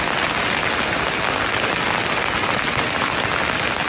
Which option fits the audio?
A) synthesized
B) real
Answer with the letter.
B